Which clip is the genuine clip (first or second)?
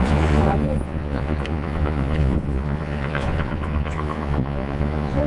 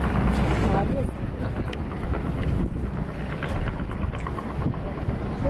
second